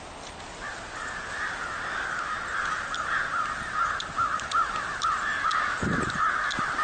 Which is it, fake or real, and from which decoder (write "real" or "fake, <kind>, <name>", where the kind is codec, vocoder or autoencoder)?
real